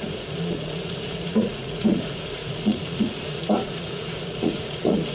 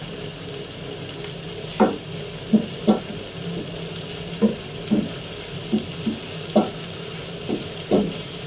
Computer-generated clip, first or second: first